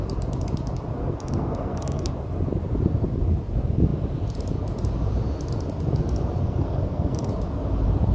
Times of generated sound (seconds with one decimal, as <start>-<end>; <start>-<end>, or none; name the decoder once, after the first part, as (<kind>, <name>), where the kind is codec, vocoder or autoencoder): 1.0-2.1 (codec, SNAC); 6.4-7.3